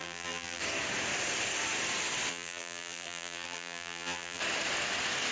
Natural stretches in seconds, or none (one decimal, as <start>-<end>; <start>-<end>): 0.6-2.3; 4.4-5.3

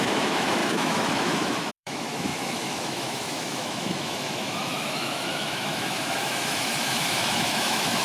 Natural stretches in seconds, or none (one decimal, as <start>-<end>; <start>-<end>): none

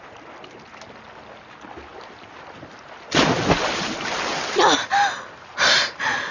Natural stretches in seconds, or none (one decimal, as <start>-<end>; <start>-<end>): 0.0-6.3

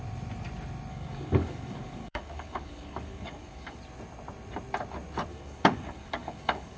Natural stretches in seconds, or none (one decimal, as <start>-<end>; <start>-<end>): 0.0-0.9; 3.8-5.3

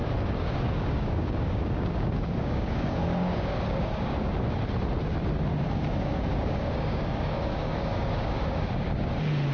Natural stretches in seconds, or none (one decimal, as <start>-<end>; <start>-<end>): 4.3-5.5; 9.1-9.5